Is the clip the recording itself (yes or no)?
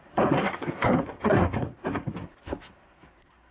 no